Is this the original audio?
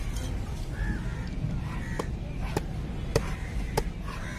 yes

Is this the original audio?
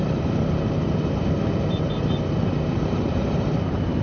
no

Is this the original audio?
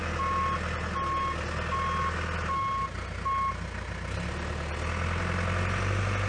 yes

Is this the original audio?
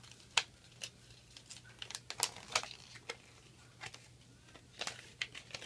yes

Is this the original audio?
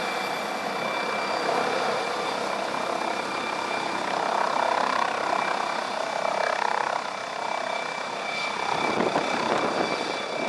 yes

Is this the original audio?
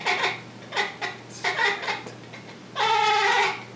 yes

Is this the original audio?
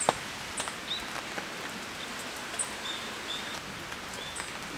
yes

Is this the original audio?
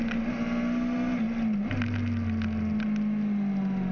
yes